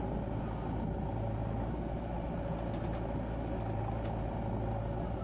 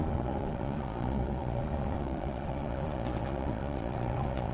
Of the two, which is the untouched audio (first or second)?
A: first